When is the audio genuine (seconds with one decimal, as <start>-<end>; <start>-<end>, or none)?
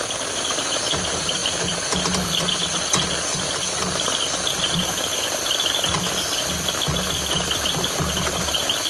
1.4-4.6